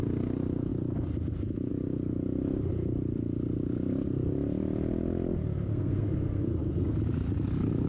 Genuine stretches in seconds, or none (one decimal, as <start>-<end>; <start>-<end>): 0.0-5.7; 7.0-7.9